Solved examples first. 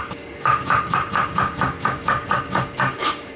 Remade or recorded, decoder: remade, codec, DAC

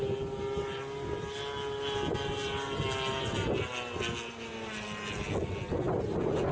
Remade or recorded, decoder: recorded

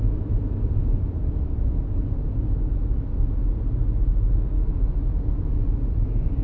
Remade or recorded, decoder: recorded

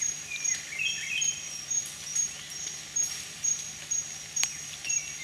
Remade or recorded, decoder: recorded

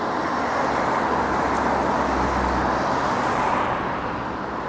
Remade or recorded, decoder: recorded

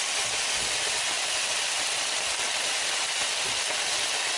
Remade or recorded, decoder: recorded